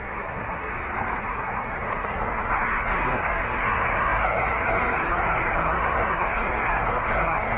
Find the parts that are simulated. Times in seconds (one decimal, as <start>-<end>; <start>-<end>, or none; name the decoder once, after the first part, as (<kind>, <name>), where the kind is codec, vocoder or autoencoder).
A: 0.0-0.7 (codec, SNAC); 1.2-7.6